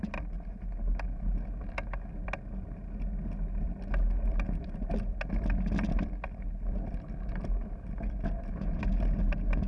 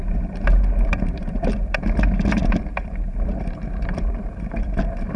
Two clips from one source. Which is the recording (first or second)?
first